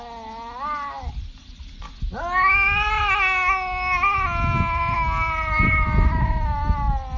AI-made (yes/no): no